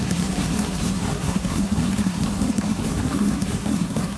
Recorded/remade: remade